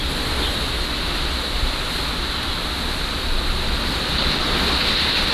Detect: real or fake real